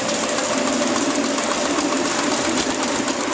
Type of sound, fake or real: real